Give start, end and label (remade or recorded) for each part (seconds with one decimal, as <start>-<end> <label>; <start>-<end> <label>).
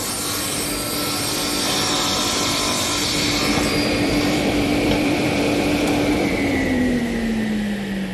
0.0-2.1 recorded; 2.1-7.0 remade; 7.0-8.1 recorded